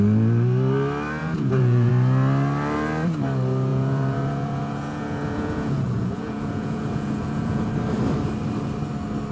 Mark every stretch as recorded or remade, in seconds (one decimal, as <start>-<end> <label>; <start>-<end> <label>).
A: 0.0-1.2 recorded; 1.2-1.9 remade; 1.9-3.7 recorded; 3.7-7.7 remade; 7.7-9.3 recorded